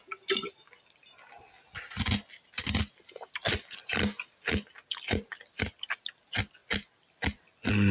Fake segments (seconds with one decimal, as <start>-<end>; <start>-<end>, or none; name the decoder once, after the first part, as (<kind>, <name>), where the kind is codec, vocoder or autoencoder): none